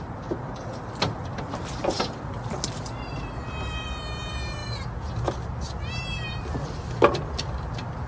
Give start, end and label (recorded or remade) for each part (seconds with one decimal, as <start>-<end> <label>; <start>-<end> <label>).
0.0-8.1 recorded